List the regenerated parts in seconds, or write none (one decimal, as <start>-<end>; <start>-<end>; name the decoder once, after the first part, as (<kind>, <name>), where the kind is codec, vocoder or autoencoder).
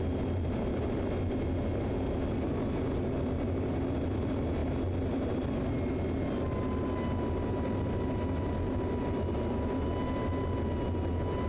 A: none